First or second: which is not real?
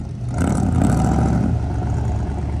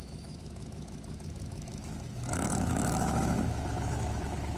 second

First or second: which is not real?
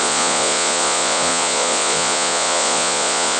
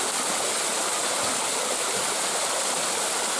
first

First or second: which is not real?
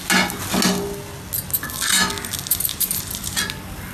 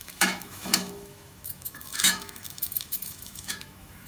second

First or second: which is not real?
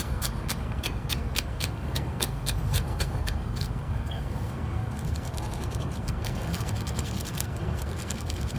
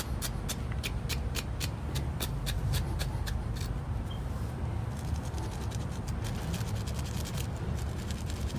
first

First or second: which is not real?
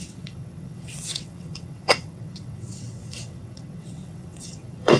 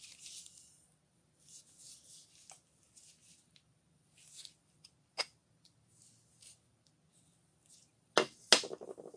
first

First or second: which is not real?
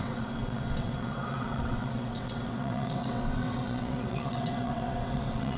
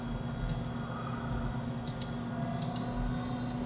first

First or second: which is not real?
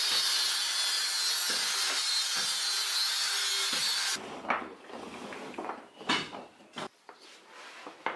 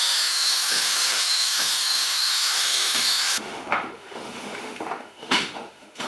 second